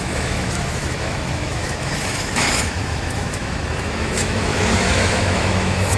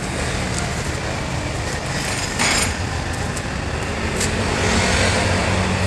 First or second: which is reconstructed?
first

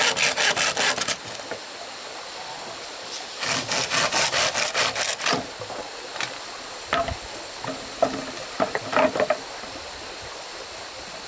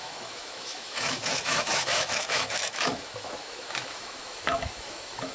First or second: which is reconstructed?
second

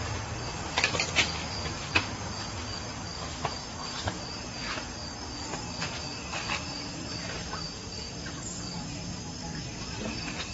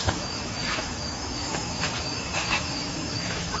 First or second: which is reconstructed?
second